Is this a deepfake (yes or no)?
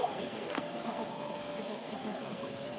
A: yes